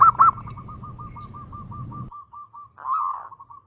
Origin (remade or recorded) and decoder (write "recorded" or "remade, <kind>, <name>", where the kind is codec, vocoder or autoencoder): recorded